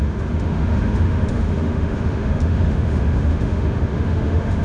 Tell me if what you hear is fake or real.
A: fake